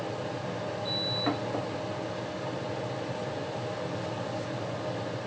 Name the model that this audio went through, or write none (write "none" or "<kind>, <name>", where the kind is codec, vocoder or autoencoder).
none